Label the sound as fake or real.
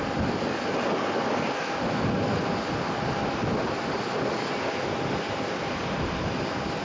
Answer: real